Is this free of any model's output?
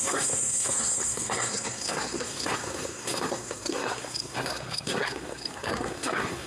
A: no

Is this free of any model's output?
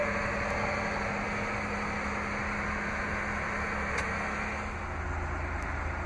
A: yes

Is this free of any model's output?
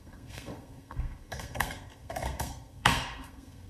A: no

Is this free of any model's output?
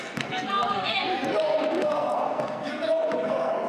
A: no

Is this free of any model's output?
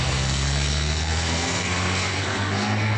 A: no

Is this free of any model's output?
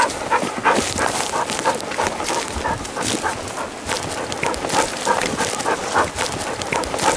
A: yes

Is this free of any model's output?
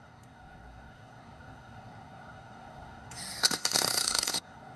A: no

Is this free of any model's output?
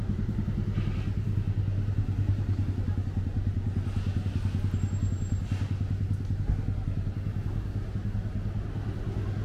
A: yes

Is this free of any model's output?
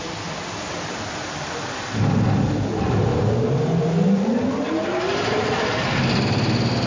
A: yes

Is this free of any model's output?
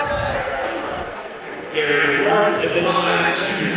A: no